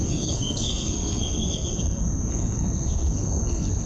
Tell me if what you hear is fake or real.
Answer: fake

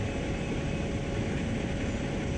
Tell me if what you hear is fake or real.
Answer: real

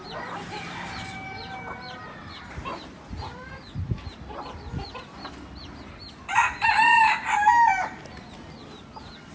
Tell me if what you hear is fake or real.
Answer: real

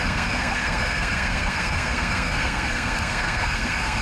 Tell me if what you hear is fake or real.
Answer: fake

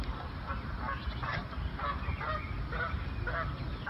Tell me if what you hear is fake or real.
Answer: real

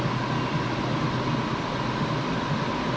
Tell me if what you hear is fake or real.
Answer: real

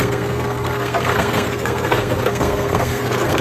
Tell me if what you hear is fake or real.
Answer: fake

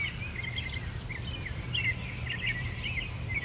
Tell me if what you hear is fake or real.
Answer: real